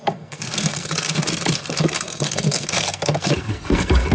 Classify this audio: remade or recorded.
remade